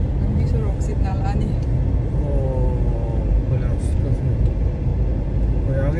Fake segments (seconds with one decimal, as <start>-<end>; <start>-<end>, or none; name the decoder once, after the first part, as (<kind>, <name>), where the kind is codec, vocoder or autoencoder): 0.9-3.2 (vocoder, BigVGAN v2)